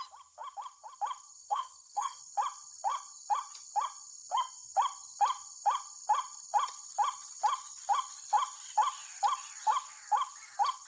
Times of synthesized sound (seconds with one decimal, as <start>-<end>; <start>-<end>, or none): 1.4-2.2